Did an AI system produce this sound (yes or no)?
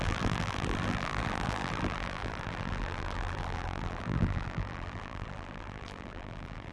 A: yes